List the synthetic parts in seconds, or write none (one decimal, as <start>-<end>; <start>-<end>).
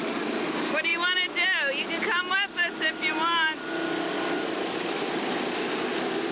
none